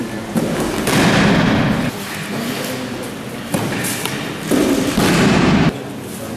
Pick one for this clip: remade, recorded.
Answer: recorded